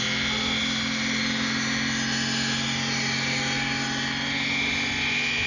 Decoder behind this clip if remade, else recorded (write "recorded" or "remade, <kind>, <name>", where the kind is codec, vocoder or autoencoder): recorded